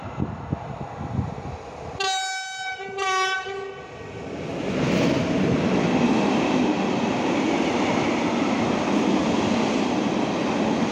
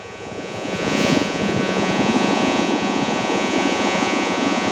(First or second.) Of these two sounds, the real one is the first